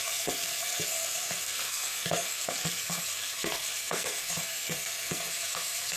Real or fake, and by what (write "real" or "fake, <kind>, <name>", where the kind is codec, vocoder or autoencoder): fake, codec, SNAC